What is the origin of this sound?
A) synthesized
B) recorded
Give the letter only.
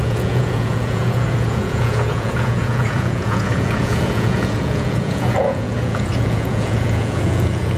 A